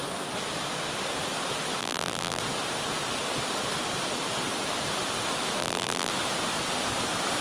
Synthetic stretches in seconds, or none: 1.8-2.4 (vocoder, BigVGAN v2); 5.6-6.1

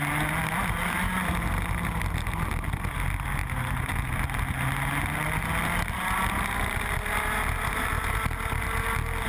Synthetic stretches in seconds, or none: 3.4-4.1 (vocoder, BigVGAN v2)

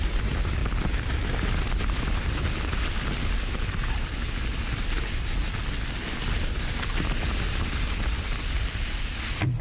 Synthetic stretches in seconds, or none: 0.0-0.6 (vocoder, BigVGAN v2); 2.0-5.4; 8.6-9.6